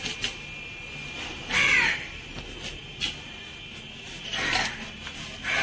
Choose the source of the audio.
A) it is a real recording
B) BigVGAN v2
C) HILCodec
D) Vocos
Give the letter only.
A